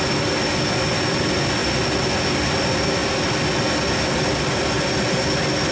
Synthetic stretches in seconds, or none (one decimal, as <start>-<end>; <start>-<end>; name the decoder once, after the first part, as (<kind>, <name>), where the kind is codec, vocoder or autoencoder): none